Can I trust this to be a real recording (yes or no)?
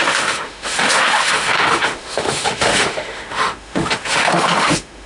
no